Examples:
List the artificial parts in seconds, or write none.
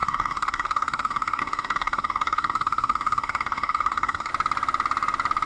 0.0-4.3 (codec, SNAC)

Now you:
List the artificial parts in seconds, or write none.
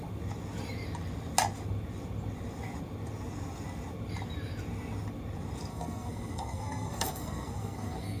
5.7-8.2 (codec, SNAC)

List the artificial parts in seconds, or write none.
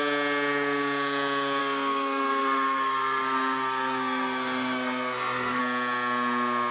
1.6-5.6 (codec, SNAC)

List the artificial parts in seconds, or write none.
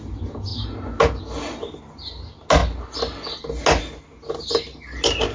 none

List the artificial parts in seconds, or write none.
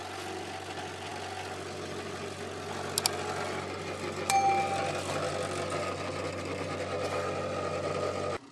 none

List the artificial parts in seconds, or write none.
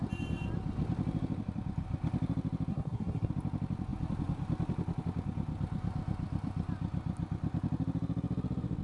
2.7-3.3 (codec, SNAC)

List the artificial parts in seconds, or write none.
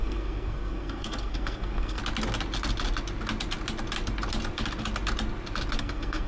0.0-2.0 (codec, SNAC); 5.8-6.3